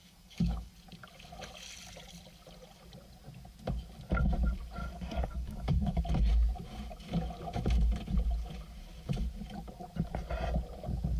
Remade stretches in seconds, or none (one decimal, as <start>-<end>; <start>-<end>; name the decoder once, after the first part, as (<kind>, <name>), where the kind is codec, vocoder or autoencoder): 0.0-0.7 (codec, DAC); 4.8-6.0